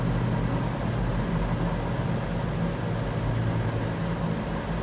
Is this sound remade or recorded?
recorded